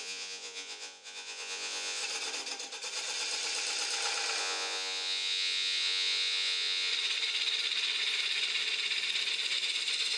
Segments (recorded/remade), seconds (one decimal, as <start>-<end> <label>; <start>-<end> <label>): 0.0-2.0 remade; 2.0-4.4 recorded; 4.4-6.9 remade; 6.9-10.2 recorded